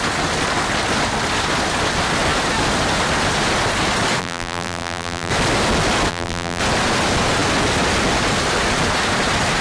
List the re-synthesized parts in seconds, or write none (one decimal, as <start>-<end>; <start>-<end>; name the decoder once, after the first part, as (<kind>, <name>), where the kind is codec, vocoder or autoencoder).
4.2-5.3 (vocoder, BigVGAN v2); 6.1-6.6